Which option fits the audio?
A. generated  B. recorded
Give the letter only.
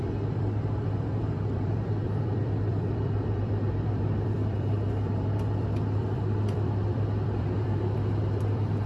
A